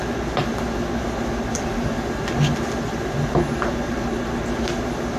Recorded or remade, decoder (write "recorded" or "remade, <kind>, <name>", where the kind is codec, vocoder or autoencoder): recorded